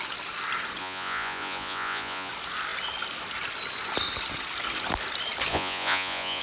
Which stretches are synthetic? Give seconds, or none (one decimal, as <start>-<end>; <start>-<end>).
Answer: 0.8-2.3; 5.5-6.4